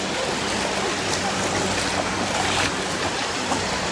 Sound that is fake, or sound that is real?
real